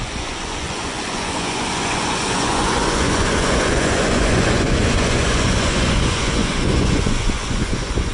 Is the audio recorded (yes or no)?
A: no